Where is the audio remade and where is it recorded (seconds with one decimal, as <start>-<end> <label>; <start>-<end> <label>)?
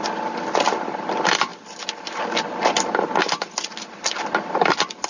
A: 0.0-5.1 recorded